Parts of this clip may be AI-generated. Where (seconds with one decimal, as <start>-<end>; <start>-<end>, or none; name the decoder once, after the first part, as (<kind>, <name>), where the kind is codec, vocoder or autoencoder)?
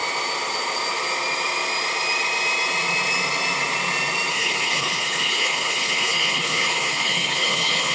4.3-7.9 (codec, HILCodec)